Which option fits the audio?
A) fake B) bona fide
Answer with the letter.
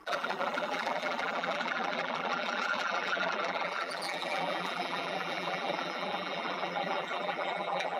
A